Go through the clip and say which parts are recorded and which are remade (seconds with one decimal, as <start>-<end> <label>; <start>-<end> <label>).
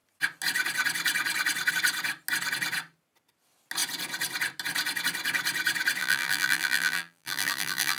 0.0-6.0 recorded; 6.0-8.0 remade